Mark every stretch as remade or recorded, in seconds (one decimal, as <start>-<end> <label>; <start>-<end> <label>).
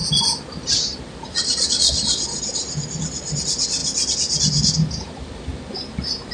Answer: 0.0-3.8 remade; 3.8-5.1 recorded; 5.1-5.5 remade; 5.5-6.3 recorded